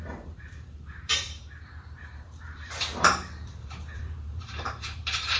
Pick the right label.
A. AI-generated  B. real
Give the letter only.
A